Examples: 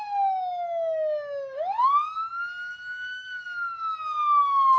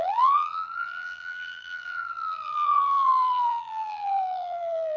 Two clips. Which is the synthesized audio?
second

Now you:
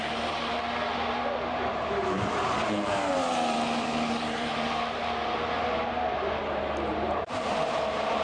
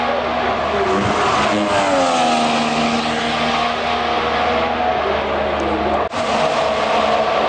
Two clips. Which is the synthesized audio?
first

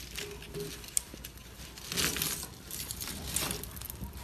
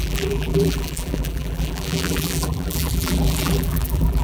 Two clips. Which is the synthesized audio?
second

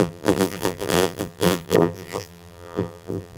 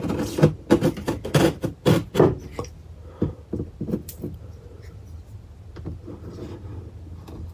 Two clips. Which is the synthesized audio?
first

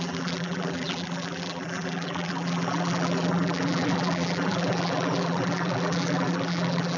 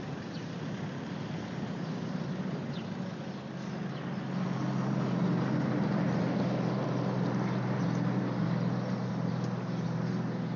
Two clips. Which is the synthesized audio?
first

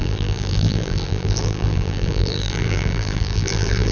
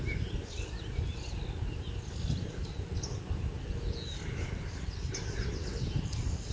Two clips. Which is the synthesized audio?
first